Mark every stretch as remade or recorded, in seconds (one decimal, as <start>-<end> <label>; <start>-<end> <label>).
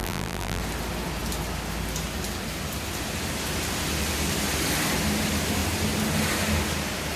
0.0-0.6 remade; 0.6-7.2 recorded